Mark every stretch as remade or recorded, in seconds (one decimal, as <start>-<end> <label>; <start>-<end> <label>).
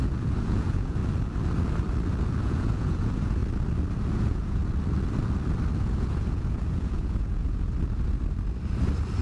0.0-1.0 remade; 1.0-2.4 recorded; 2.4-3.4 remade; 3.4-4.1 recorded; 4.1-4.6 remade; 4.6-5.8 recorded; 5.8-7.7 remade; 7.7-9.2 recorded